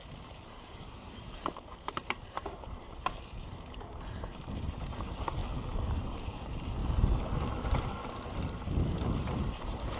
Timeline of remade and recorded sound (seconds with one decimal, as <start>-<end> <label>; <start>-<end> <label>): 0.0-5.4 remade; 5.4-6.0 recorded; 6.0-6.8 remade; 6.8-8.8 recorded; 8.8-10.0 remade